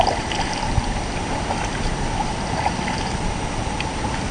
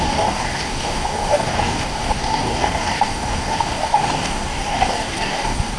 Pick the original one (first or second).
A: first